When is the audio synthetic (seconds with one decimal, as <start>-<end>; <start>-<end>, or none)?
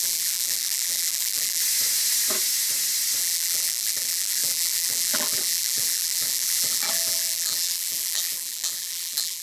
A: 0.0-1.6; 3.2-9.4